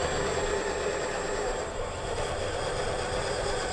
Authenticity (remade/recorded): recorded